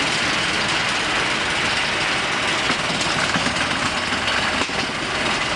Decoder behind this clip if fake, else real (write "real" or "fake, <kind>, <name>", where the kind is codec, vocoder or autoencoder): real